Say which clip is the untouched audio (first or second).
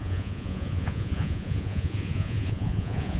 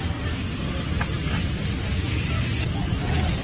second